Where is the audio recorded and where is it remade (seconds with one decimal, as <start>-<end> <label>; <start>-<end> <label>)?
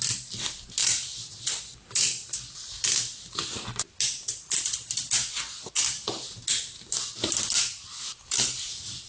0.0-0.8 recorded; 0.8-2.4 remade; 2.4-9.1 recorded